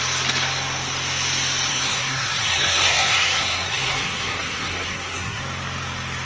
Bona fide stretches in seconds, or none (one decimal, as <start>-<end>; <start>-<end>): 0.0-1.7; 5.4-6.2